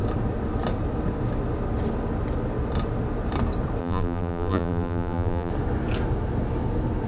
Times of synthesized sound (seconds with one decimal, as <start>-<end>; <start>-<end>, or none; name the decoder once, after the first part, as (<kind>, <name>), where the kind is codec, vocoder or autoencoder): 3.8-5.5 (vocoder, BigVGAN v2)